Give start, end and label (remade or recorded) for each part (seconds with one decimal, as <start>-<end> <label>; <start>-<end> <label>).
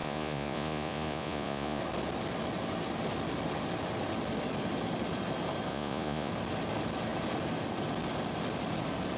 0.0-1.8 remade; 1.8-5.7 recorded; 5.7-6.3 remade; 6.3-9.2 recorded